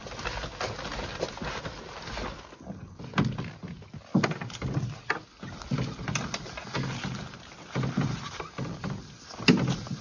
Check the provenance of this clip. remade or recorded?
recorded